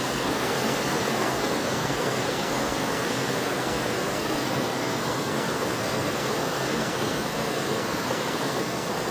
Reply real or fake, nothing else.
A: fake